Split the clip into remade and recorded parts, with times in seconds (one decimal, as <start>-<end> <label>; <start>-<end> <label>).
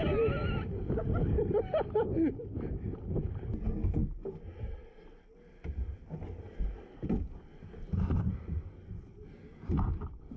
0.0-10.4 recorded